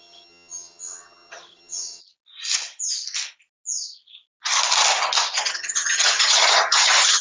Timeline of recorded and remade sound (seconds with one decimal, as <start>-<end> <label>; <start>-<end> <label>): 0.0-2.0 remade; 2.0-5.4 recorded; 5.4-7.2 remade